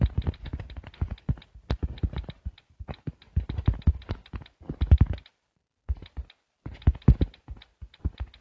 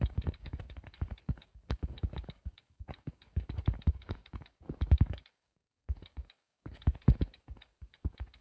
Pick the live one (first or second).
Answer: first